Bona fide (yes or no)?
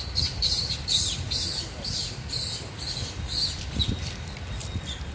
yes